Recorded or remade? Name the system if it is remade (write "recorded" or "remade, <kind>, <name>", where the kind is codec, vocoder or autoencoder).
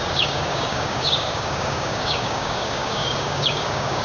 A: remade, codec, DAC